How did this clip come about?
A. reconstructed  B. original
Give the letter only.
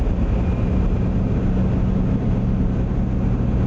B